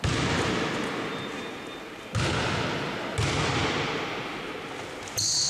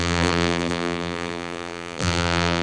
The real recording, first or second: first